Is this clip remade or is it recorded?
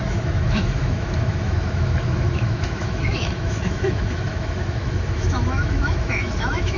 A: remade